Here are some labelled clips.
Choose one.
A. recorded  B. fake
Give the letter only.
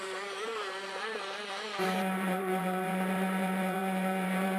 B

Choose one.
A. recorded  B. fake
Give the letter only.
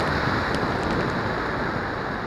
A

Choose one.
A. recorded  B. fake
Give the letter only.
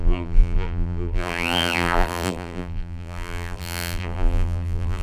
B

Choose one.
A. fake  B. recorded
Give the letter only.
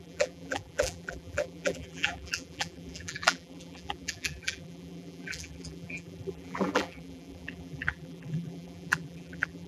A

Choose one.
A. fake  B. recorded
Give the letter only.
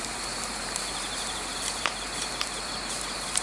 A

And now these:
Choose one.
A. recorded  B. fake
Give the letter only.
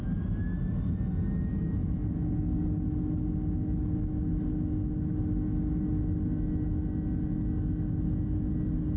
A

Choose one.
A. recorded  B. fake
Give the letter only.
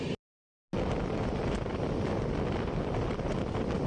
A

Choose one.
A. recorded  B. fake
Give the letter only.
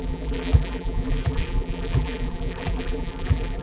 B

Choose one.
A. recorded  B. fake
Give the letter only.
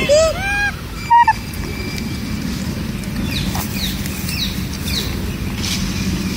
A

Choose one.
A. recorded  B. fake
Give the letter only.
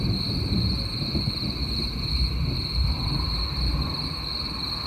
A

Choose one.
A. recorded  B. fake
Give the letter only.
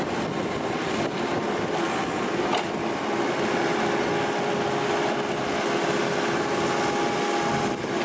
A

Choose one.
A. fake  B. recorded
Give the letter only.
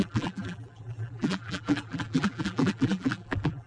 A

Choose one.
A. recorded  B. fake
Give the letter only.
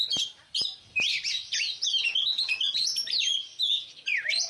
A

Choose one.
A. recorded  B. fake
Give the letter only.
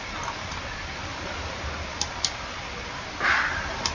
A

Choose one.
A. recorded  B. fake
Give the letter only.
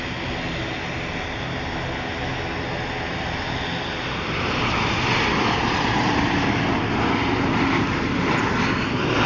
A